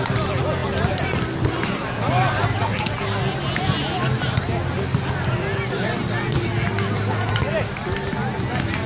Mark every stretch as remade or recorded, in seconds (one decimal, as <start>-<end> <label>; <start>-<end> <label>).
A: 0.0-8.9 recorded